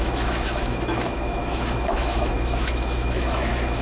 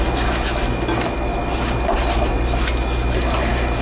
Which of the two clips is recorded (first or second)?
second